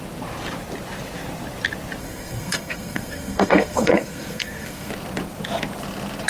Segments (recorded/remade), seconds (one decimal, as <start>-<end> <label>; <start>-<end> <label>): 0.0-2.0 recorded; 2.0-4.9 remade; 4.9-6.3 recorded

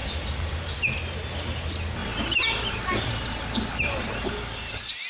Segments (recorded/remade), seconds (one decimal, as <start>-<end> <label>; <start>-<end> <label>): 0.0-0.7 remade; 0.7-2.0 recorded; 2.0-5.1 remade

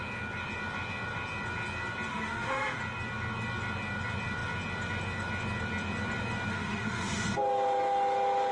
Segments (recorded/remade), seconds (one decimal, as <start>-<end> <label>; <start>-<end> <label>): 0.0-2.1 recorded; 2.1-2.8 remade; 2.8-6.5 recorded; 6.5-7.3 remade; 7.3-8.5 recorded

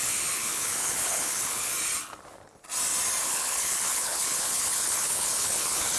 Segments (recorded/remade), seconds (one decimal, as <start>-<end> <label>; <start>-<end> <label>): 0.0-1.7 remade; 1.7-3.2 recorded; 3.2-6.0 remade

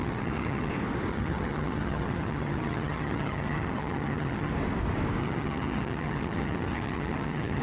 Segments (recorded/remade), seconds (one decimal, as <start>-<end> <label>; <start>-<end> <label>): 0.0-0.7 remade; 0.7-1.1 recorded; 1.1-4.5 remade; 4.5-5.2 recorded; 5.2-7.6 remade

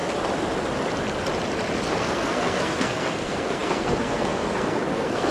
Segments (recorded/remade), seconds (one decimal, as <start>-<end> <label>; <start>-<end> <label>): 0.0-1.9 recorded; 1.9-5.3 remade

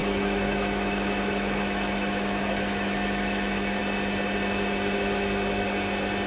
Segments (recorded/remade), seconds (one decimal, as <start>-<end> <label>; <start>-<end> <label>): 0.0-3.8 remade; 3.8-6.3 recorded

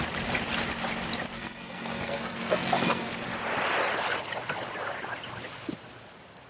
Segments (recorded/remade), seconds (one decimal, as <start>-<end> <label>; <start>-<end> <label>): 0.0-1.3 recorded; 1.3-3.1 remade; 3.1-6.5 recorded